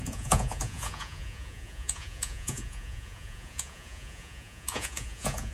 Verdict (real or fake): fake